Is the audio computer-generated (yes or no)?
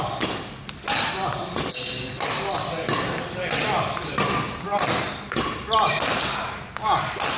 no